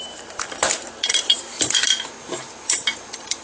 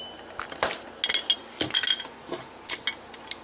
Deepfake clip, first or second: first